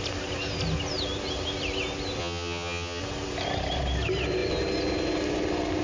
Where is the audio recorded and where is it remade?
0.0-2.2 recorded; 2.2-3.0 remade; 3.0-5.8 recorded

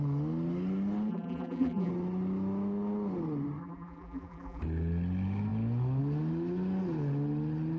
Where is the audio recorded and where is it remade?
0.0-1.1 recorded; 1.1-1.9 remade; 1.9-3.6 recorded; 3.6-4.6 remade; 4.6-7.8 recorded

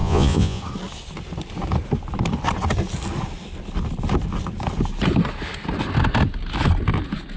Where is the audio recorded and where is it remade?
0.0-0.6 remade; 0.6-7.4 recorded

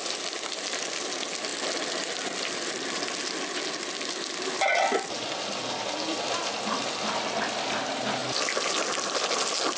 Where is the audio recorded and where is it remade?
0.0-9.8 recorded

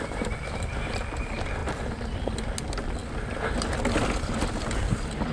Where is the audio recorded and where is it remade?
0.0-5.3 recorded

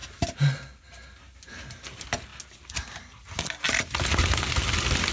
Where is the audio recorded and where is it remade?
0.0-5.1 recorded